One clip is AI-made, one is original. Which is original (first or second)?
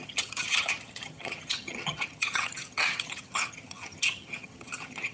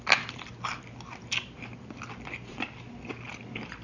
second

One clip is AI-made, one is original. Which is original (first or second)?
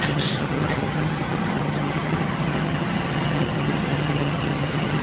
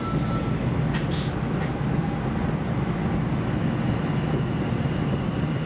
second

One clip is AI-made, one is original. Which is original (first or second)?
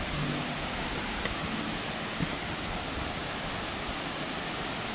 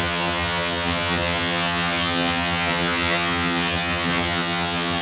first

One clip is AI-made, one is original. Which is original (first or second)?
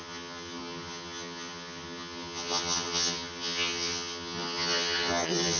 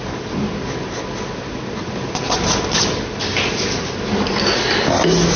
second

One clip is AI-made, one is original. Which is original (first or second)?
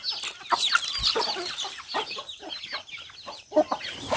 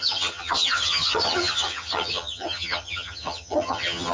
first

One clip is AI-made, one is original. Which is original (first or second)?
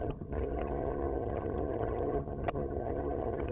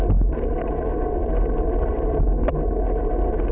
second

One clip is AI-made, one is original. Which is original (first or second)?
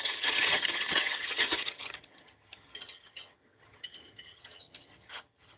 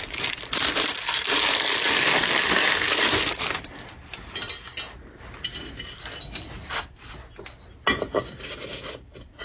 second